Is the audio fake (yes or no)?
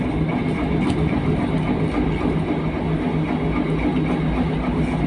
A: no